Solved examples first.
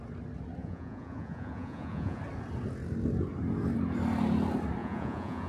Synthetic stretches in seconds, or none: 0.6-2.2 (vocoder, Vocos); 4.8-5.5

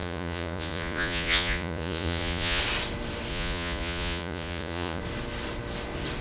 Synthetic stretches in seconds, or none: 0.0-2.6 (vocoder, Vocos); 3.3-5.0